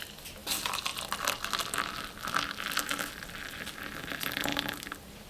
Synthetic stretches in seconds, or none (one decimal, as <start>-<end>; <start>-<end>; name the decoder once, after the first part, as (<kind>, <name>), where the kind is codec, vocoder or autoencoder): none